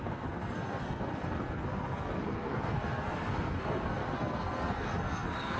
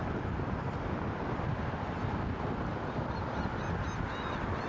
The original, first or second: second